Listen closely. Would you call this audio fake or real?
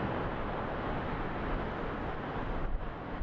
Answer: real